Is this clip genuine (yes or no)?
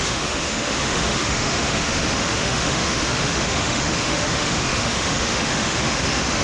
no